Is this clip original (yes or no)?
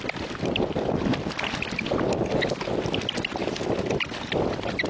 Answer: yes